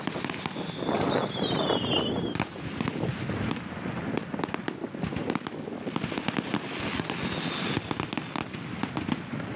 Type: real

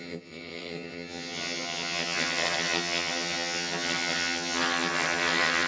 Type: fake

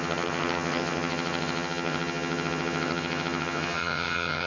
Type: fake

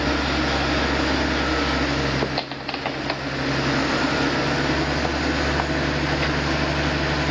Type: real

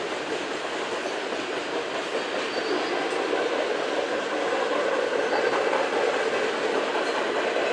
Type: real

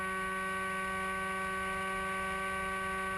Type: real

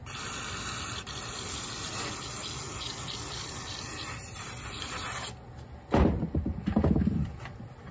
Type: real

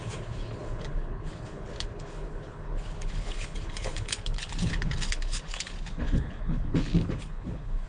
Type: fake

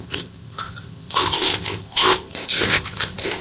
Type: fake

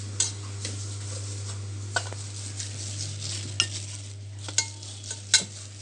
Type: real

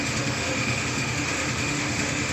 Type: fake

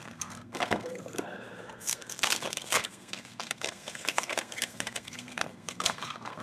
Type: fake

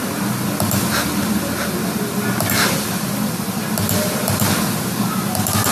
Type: real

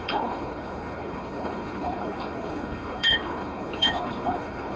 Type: fake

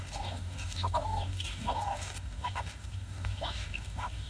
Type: fake